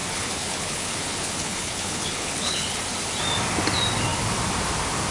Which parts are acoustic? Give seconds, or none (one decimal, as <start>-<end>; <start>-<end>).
2.8-5.1